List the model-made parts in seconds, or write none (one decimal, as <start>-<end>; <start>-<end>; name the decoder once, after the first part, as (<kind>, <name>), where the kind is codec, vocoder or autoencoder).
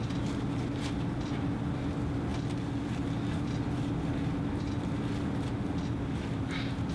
none